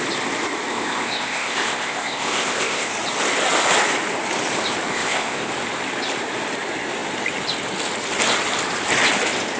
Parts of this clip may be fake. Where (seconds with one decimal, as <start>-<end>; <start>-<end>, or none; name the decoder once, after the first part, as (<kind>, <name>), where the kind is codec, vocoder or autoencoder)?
0.7-2.9 (codec, ZipCodec); 4.9-5.5